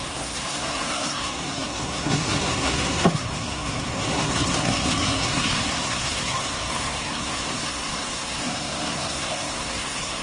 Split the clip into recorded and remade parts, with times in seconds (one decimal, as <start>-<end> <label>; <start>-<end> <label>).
0.0-10.2 remade